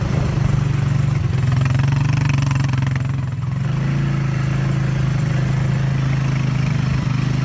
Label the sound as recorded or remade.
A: recorded